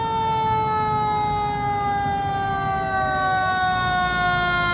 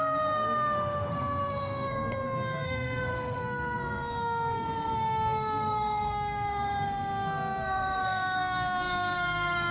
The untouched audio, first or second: first